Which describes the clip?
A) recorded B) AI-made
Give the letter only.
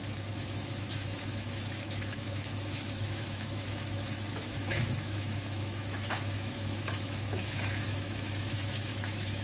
B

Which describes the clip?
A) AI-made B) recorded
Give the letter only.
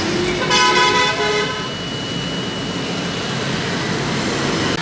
B